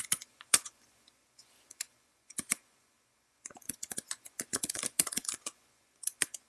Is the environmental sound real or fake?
fake